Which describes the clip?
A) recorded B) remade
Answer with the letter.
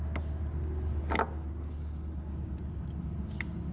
A